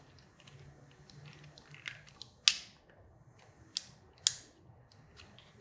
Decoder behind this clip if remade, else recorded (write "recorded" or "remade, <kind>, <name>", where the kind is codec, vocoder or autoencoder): recorded